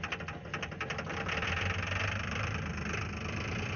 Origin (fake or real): real